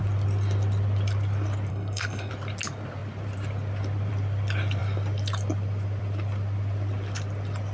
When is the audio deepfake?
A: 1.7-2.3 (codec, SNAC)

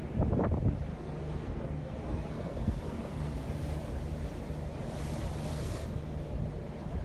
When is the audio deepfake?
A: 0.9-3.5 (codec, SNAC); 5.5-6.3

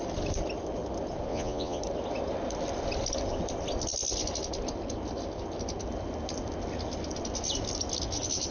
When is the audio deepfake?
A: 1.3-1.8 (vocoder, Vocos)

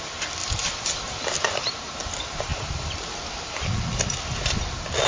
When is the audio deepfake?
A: 0.4-1.7 (vocoder, BigVGAN v2); 2.5-3.6

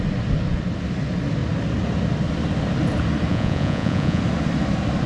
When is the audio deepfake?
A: 3.3-4.2 (vocoder, Vocos)

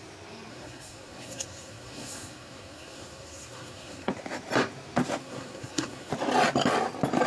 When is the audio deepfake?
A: 0.5-4.1 (codec, SNAC); 5.2-6.1

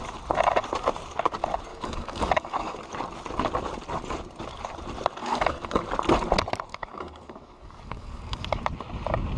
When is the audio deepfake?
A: 1.7-2.8 (codec, DAC); 5.2-5.8; 6.7-8.5